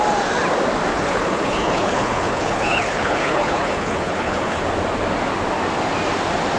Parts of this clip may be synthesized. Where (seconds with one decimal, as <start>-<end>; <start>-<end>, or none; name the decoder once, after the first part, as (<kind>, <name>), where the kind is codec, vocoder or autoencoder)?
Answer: 0.9-4.6 (codec, HILCodec)

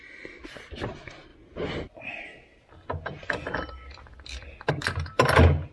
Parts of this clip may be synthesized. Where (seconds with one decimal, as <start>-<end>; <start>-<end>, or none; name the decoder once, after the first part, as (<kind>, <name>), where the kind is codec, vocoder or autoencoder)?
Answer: none

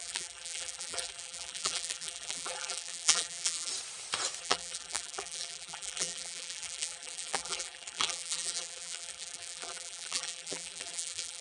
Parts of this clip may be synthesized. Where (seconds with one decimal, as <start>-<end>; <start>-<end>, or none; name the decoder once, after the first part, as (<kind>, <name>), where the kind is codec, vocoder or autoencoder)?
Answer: 0.0-3.7 (vocoder, BigVGAN v2); 4.4-11.4

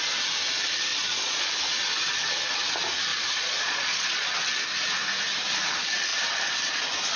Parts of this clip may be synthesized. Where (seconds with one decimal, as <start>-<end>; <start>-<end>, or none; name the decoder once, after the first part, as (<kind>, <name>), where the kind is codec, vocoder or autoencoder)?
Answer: 0.9-1.4 (vocoder, Vocos); 3.1-4.3

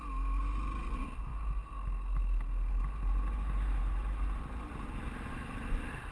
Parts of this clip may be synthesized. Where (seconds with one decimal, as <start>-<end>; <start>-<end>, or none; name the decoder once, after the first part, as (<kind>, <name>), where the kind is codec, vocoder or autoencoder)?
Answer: none

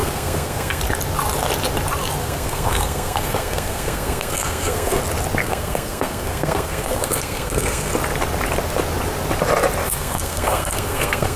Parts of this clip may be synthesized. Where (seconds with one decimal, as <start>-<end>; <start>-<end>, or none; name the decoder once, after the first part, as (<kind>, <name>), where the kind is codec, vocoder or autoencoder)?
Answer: 0.0-0.8 (codec, SNAC); 2.2-5.0; 5.4-7.9; 9.8-11.4